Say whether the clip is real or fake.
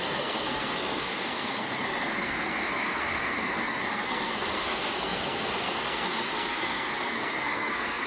fake